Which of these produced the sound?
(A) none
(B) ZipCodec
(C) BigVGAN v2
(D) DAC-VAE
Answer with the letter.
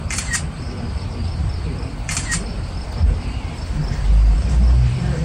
C